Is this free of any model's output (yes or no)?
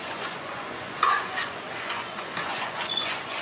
no